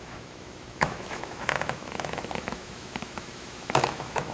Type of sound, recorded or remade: remade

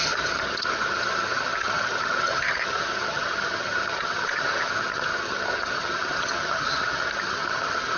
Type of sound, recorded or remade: remade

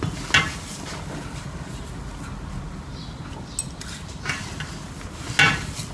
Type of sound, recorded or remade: recorded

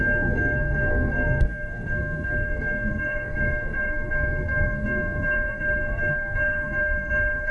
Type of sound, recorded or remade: remade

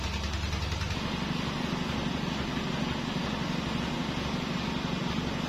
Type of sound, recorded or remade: recorded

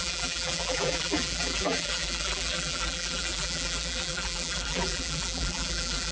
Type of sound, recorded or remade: remade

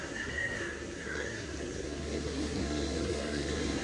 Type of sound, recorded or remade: remade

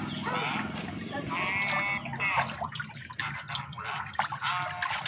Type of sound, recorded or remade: recorded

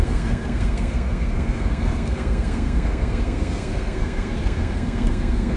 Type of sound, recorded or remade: remade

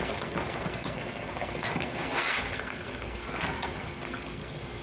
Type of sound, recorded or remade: remade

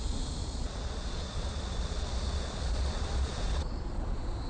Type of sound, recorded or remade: remade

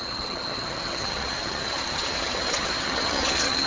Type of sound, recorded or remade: remade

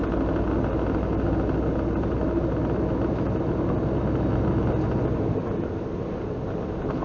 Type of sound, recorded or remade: recorded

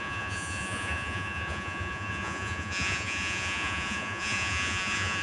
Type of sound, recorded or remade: remade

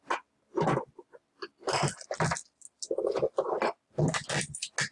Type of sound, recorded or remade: recorded